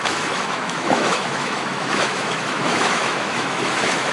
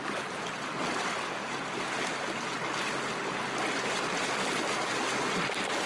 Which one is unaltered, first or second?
second